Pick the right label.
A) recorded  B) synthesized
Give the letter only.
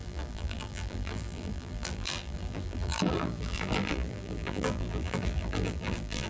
B